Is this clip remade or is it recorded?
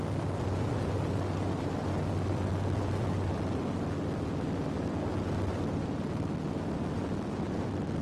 recorded